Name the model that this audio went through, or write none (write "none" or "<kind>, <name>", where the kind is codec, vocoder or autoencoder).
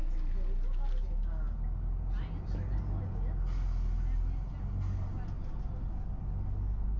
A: none